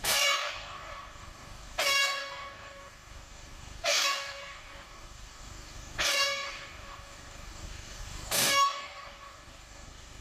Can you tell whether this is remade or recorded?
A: remade